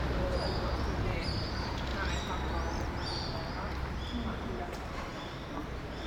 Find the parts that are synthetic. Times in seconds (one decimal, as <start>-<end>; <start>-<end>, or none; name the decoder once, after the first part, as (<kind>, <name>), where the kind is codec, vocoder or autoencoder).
0.0-1.9 (vocoder, BigVGAN v2); 3.8-6.1